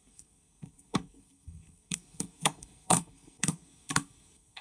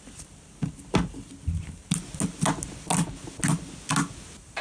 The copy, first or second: first